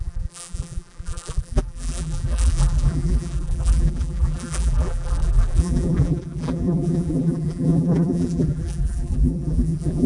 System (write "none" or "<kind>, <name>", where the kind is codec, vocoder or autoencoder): vocoder, BigVGAN v2